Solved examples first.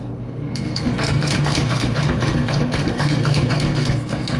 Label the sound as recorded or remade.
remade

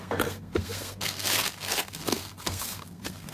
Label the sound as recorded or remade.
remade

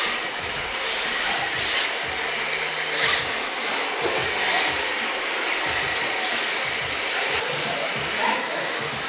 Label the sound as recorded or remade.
recorded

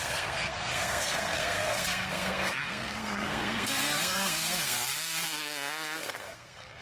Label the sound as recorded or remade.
remade